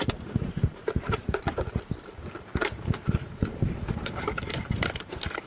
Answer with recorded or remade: remade